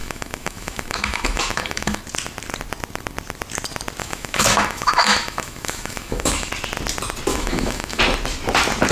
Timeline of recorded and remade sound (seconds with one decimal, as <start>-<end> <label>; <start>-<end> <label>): 0.0-2.0 remade; 2.0-4.0 recorded; 4.0-6.5 remade; 6.5-7.3 recorded; 7.3-8.0 remade; 8.0-8.9 recorded